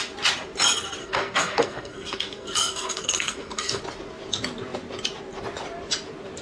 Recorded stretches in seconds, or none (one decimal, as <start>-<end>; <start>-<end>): 0.0-1.0; 3.8-6.4